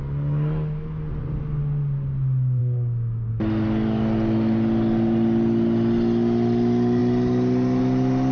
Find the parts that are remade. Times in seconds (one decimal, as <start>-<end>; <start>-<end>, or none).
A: 2.6-3.3